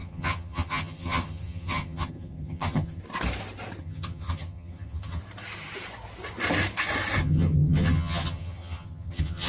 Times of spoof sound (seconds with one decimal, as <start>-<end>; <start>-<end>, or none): 0.0-3.0; 3.8-5.2; 7.2-9.5